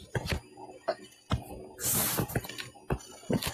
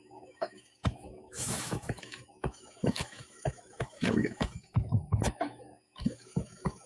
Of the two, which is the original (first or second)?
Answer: first